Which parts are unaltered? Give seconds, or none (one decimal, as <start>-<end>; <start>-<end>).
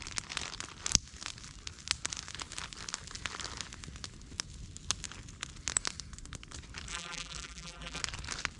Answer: 0.0-6.9; 8.0-8.6